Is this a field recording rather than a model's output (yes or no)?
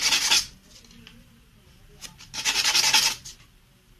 yes